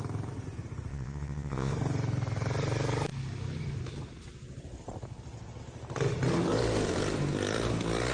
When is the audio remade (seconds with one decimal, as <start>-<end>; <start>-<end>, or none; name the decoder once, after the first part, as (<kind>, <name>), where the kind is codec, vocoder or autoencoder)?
0.9-1.7 (vocoder, Vocos)